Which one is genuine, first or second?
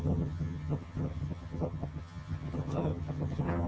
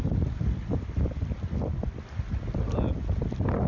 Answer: second